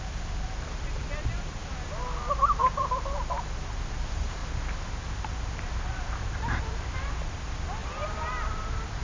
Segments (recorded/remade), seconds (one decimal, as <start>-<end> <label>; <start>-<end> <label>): 0.0-1.6 remade; 1.6-2.3 recorded; 2.3-4.4 remade; 4.4-7.2 recorded; 7.2-9.0 remade